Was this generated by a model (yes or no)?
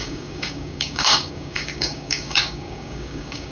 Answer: yes